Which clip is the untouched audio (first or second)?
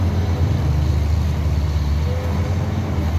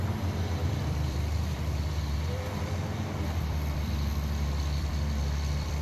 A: first